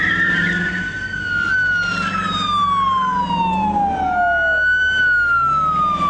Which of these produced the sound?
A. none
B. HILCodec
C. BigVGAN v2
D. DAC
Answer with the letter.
A